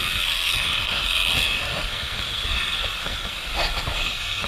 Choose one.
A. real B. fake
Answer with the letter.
B